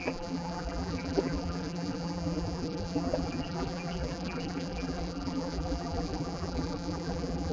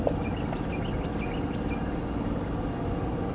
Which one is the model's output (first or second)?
first